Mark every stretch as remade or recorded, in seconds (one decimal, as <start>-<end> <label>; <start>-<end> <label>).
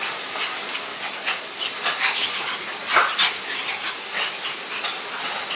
0.0-5.6 recorded